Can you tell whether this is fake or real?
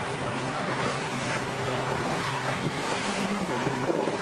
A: fake